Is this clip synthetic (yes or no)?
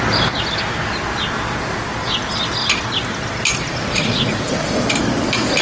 no